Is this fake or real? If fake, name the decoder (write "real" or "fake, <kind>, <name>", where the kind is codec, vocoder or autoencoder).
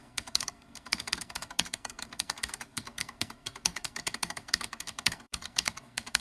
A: fake, codec, SNAC